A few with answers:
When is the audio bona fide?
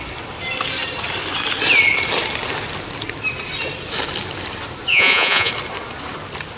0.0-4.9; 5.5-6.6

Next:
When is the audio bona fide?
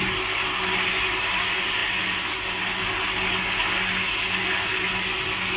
0.0-5.6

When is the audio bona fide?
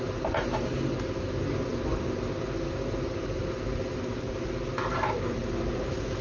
0.0-6.2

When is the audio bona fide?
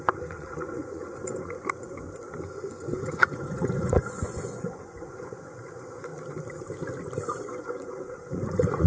1.6-2.6; 6.1-7.6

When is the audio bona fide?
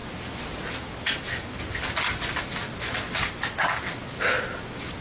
0.0-5.0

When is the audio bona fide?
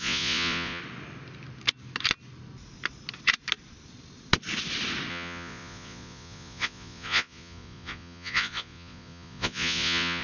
0.8-5.1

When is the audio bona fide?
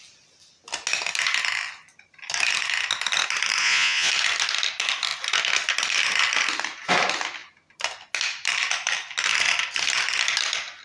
0.0-3.6; 4.1-10.8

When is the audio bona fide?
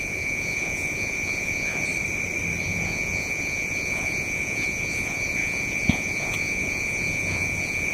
1.9-2.6